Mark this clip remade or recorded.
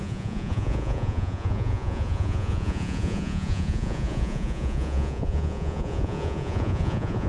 remade